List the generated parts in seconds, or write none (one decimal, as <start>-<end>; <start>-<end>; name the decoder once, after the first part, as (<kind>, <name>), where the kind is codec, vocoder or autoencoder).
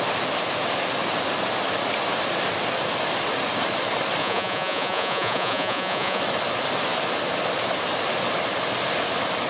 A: 4.2-6.2 (vocoder, Vocos)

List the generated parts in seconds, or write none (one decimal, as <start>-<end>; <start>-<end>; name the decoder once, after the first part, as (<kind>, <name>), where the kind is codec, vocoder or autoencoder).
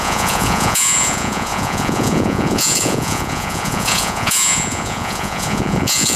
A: 0.0-6.2 (vocoder, Vocos)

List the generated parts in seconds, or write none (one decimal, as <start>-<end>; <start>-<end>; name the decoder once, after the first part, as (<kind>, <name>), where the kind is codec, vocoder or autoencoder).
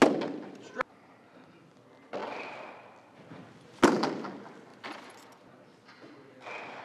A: none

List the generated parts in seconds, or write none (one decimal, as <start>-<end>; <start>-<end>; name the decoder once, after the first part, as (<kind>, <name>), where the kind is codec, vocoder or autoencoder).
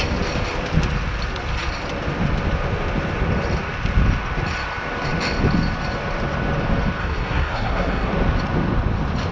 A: 7.0-8.1 (codec, SNAC)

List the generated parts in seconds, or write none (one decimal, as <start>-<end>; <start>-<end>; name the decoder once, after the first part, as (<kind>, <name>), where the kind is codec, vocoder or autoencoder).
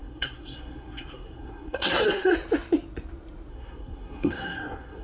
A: 0.0-2.3 (codec, SNAC); 3.5-5.0